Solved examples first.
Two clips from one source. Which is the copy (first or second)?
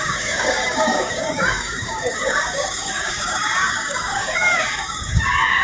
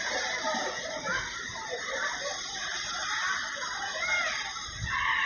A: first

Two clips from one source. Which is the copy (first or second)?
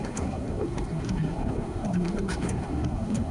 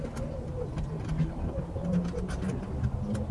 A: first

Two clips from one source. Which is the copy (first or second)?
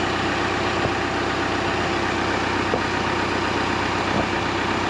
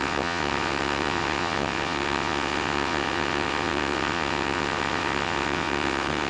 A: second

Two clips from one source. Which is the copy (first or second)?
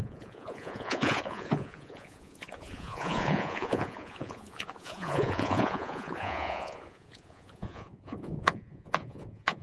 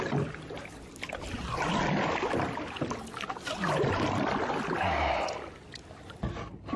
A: first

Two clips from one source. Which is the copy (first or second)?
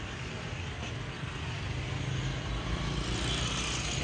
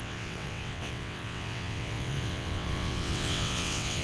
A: second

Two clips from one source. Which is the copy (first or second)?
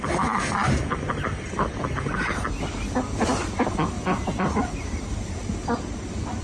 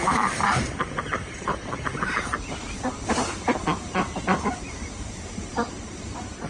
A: second